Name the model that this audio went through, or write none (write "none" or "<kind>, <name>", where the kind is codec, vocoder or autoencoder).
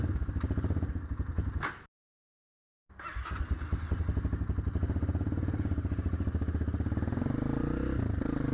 none